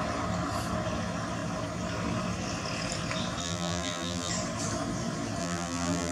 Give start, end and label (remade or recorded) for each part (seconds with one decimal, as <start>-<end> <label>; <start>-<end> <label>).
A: 0.0-3.4 recorded; 3.4-4.3 remade; 4.3-5.4 recorded; 5.4-6.1 remade